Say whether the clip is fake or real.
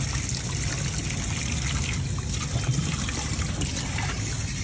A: real